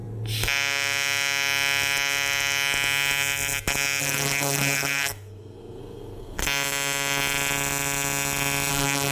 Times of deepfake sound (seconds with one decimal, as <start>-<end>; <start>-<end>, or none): 4.0-6.4; 8.7-9.1